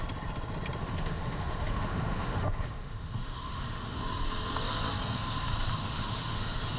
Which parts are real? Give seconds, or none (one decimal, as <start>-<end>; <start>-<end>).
0.0-0.8; 4.0-5.7